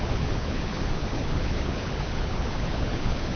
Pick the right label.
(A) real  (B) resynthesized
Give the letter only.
B